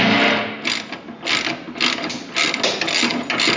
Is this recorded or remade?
recorded